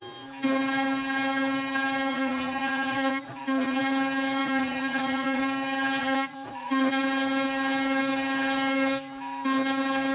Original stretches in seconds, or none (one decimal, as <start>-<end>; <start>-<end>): 0.0-2.1; 3.8-4.4; 5.4-6.0; 7.0-10.1